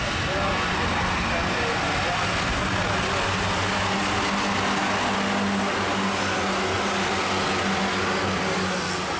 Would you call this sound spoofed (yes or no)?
no